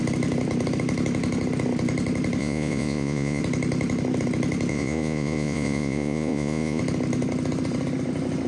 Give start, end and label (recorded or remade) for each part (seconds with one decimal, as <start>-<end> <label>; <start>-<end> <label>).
0.0-2.4 recorded; 2.4-3.4 remade; 3.4-4.7 recorded; 4.7-6.8 remade; 6.8-8.5 recorded